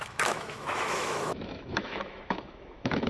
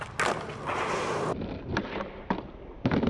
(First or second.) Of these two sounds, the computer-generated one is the first